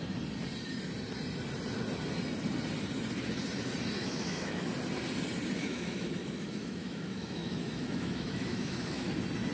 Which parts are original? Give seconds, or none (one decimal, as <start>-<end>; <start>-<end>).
0.0-4.0; 4.7-5.6; 9.1-9.5